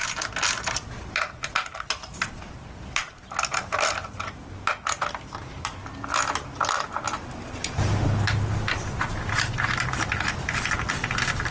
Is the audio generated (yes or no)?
no